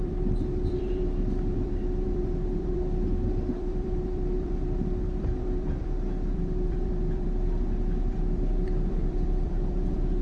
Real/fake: fake